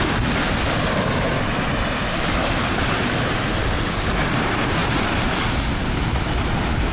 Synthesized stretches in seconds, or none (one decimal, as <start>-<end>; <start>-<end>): none